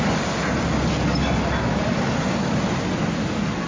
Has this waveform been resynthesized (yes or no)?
no